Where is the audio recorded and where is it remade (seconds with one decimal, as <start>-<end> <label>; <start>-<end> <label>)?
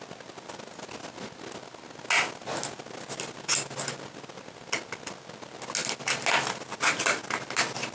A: 0.0-7.9 recorded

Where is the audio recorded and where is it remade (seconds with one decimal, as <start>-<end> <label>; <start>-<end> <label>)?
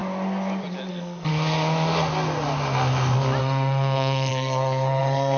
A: 0.0-0.9 recorded; 0.9-1.3 remade; 1.3-3.4 recorded; 3.4-5.4 remade